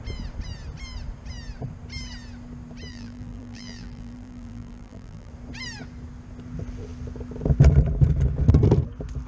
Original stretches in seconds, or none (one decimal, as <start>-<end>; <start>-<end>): 0.0-2.9; 5.3-9.3